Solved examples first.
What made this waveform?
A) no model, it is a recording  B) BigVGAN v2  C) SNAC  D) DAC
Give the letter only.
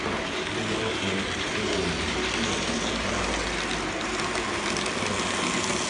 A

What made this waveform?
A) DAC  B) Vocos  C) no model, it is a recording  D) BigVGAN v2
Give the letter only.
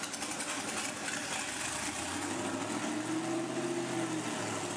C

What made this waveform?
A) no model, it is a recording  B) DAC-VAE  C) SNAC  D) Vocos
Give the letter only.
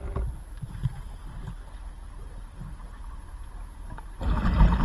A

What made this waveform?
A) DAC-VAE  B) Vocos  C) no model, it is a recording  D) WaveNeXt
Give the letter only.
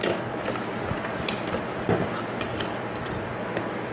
C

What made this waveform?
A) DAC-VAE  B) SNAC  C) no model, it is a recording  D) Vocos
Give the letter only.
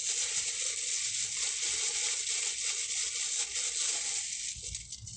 C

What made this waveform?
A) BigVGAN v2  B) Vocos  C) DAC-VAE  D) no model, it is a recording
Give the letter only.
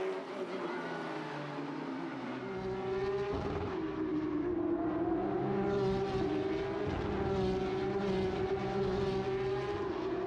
D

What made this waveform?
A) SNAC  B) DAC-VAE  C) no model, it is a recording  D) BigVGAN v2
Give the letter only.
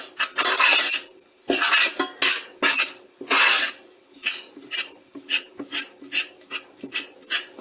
C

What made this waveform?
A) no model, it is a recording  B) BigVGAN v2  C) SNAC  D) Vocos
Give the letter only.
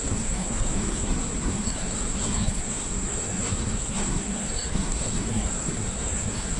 C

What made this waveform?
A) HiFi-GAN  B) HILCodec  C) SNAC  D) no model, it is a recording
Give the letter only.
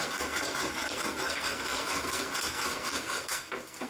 C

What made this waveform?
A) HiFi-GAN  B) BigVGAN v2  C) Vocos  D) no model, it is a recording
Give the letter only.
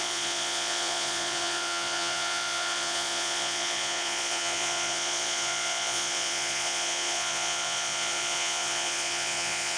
C